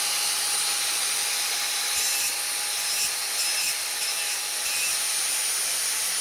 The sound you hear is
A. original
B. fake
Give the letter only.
A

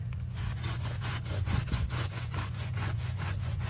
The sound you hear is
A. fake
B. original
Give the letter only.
A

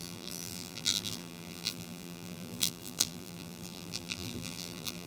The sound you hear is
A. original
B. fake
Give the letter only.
B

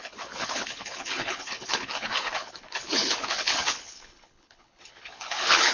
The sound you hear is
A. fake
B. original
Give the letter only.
A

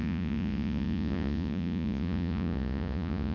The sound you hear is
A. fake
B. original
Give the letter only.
A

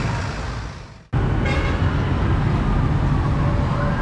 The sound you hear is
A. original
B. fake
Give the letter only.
A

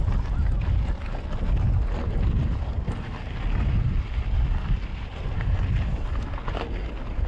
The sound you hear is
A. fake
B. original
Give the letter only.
B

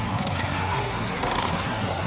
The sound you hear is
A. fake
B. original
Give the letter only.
A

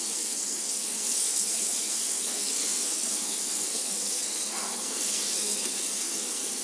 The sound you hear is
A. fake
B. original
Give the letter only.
A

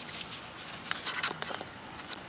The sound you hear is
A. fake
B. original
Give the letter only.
A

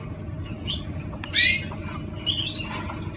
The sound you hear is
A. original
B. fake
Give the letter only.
A